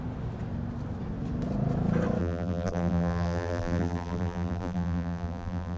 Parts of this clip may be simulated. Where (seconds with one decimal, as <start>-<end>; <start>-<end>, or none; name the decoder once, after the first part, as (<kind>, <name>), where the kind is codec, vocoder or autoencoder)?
2.2-5.8 (vocoder, BigVGAN v2)